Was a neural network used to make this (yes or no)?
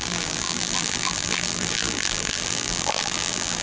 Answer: yes